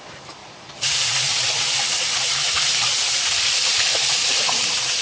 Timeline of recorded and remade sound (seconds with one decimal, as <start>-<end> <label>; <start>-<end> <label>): 0.0-5.0 remade